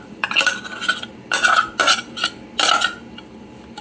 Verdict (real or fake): real